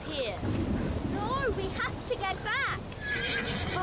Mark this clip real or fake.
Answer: real